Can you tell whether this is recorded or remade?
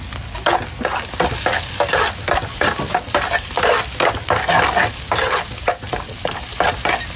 recorded